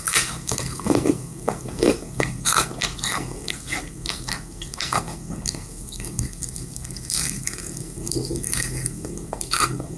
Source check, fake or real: fake